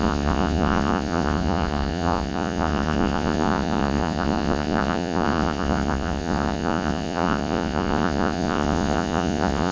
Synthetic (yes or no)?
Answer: yes